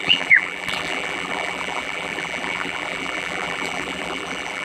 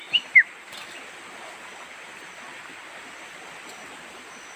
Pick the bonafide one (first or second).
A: second